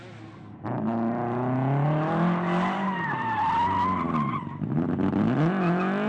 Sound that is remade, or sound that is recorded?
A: recorded